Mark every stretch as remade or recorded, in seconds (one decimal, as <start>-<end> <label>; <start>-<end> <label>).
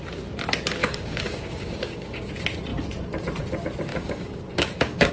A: 0.0-0.8 recorded; 0.8-2.3 remade; 2.3-3.9 recorded; 3.9-5.1 remade